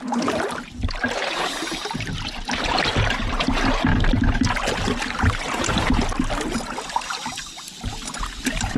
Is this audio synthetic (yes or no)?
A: no